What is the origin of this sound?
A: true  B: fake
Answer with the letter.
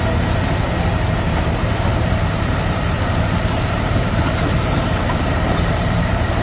B